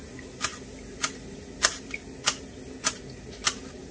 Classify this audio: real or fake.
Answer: real